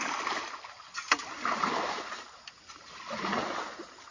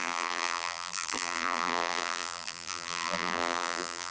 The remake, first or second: second